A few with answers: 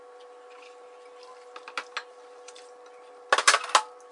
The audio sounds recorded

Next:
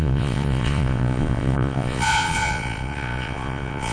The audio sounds remade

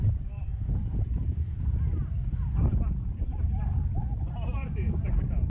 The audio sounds remade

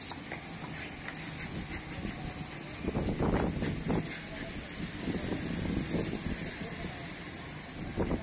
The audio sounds recorded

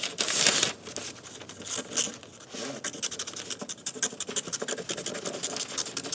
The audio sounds recorded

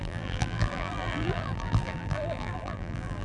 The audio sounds remade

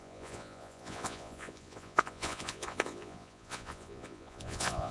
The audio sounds remade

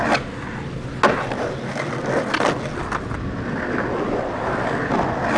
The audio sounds recorded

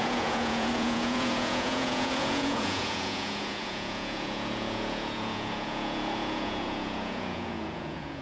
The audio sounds remade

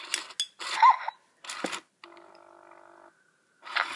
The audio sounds recorded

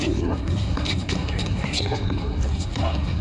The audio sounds remade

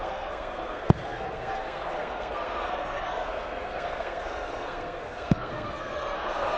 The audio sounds remade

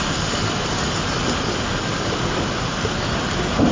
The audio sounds recorded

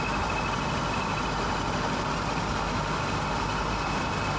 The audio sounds recorded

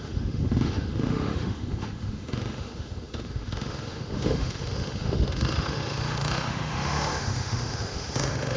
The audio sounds remade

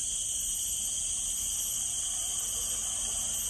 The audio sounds recorded